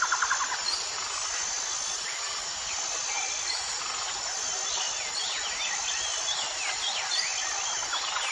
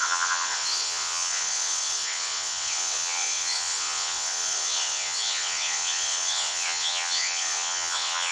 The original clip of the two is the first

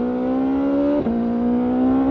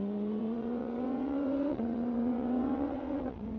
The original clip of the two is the first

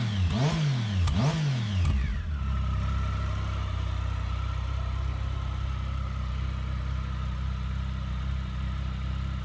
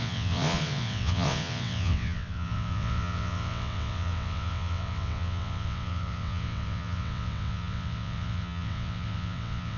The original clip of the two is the first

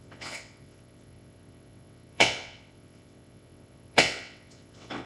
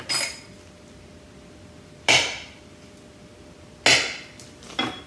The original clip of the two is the second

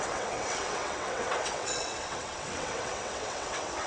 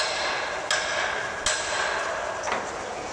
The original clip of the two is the second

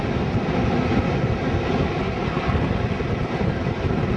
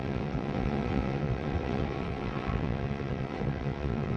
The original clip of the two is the first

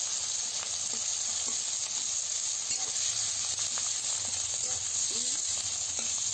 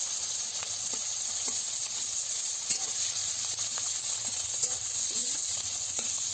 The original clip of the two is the first